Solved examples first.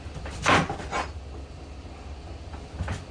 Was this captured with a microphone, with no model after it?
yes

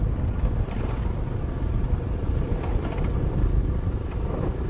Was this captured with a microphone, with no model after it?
yes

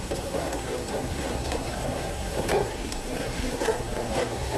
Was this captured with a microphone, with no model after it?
no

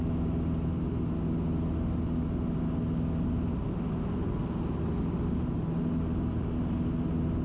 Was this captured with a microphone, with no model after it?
yes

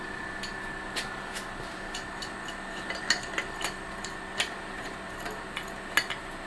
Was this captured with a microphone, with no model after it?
yes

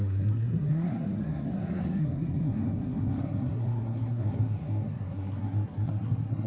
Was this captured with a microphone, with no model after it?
no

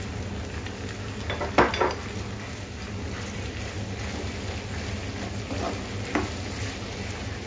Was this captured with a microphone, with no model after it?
yes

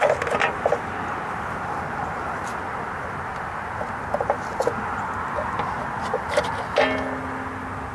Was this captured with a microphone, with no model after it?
yes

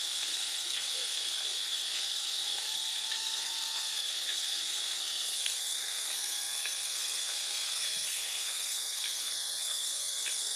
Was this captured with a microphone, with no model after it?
no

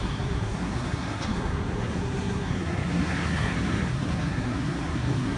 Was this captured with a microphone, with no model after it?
no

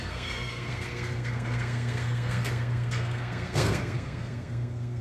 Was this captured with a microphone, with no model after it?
no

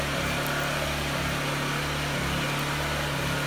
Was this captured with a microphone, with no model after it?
yes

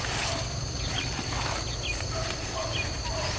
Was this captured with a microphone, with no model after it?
yes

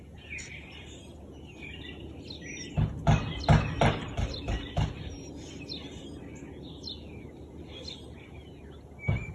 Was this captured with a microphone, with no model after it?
yes